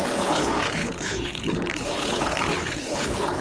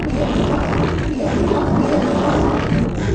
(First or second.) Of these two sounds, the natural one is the second